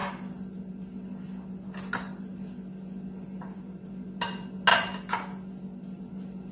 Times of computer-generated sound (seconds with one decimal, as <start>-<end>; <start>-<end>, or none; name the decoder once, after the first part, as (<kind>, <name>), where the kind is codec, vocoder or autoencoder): none